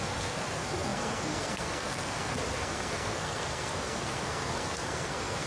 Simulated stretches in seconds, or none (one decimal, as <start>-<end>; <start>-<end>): 0.0-5.5